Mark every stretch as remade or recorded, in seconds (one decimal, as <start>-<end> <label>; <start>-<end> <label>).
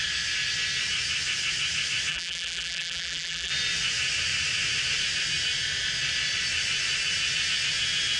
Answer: 0.0-2.1 recorded; 2.1-3.5 remade; 3.5-8.2 recorded